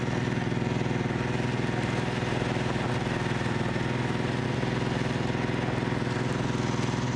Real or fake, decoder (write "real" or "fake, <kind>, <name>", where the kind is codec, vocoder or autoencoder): real